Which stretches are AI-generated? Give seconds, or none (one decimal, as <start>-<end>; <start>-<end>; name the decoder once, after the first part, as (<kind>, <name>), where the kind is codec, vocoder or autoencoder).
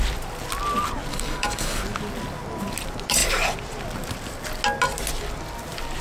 1.1-1.8 (codec, DAC)